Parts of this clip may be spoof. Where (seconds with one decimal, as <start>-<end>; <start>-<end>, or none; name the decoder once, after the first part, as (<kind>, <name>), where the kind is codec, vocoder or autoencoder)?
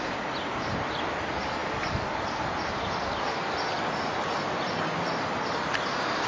none